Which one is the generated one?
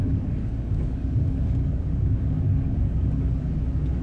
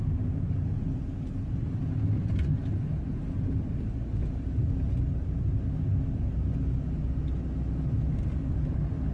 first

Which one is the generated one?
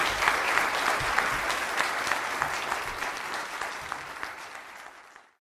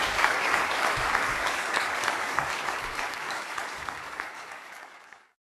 second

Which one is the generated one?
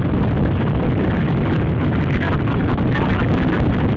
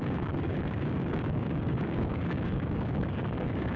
second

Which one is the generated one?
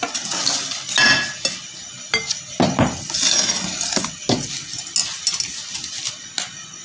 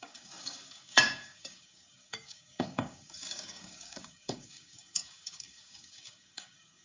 second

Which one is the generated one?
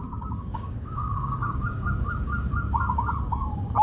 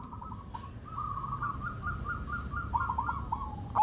first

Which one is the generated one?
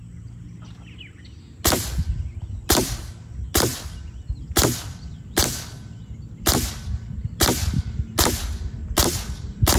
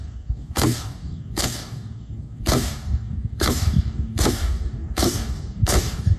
second